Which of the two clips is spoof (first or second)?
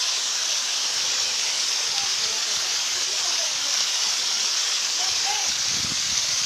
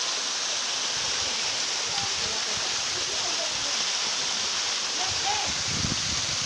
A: first